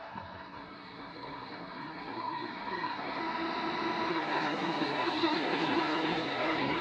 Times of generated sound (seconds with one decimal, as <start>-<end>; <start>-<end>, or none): 0.0-3.2; 4.1-6.8